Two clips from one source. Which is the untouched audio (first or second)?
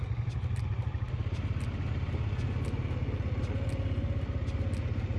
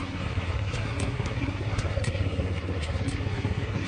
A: first